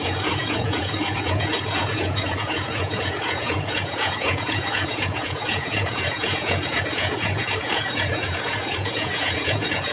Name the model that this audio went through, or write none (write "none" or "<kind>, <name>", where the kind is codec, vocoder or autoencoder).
vocoder, Vocos